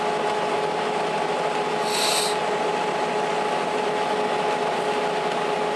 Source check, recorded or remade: recorded